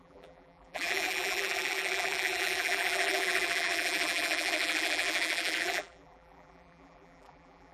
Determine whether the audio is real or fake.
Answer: fake